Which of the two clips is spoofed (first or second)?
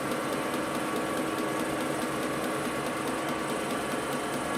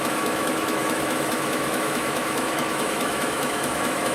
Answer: second